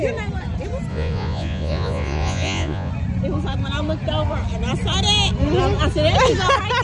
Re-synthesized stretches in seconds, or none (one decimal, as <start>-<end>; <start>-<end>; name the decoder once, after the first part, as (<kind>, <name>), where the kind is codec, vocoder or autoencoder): 0.9-2.9 (vocoder, Vocos)